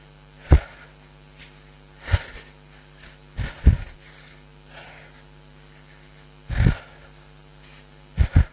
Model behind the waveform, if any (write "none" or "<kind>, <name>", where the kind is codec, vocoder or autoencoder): none